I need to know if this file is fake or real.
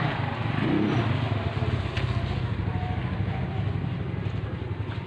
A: real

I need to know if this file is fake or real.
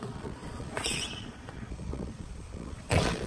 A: fake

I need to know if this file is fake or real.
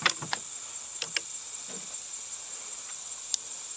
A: real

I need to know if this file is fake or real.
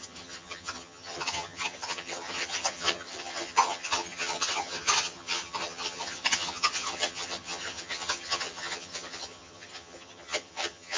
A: fake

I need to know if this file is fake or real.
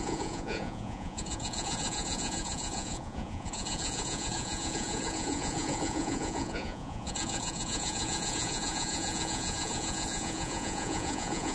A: fake